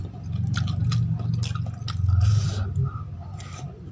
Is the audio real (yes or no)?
yes